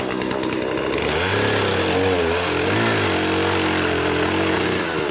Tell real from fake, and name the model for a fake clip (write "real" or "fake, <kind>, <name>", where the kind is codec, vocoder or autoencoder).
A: real